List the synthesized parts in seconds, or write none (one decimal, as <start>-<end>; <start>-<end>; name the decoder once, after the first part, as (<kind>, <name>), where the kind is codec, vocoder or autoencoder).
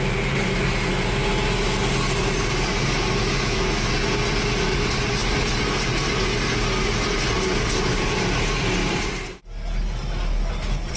3.2-3.9 (autoencoder, DAC-VAE)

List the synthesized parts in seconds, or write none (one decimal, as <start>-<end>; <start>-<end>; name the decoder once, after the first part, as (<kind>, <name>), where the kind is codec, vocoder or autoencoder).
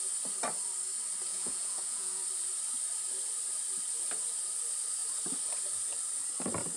1.3-2.2 (vocoder, Vocos)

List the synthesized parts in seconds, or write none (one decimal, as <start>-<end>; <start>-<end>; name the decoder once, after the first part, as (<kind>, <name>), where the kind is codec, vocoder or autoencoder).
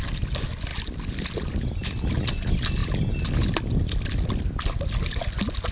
none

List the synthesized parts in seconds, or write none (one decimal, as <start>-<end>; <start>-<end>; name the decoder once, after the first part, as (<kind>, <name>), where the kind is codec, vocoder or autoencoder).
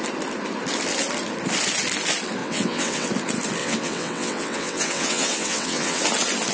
2.4-3.1 (vocoder, WaveNeXt); 3.6-6.0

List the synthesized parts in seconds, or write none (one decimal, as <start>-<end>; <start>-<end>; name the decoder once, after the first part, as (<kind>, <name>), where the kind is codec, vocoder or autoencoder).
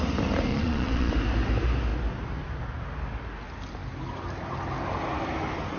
0.5-1.1 (vocoder, Vocos)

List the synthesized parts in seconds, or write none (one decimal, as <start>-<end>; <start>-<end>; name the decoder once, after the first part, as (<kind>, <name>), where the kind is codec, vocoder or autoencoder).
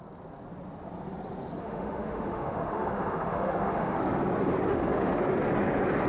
1.6-4.0 (autoencoder, DAC-VAE); 4.7-5.2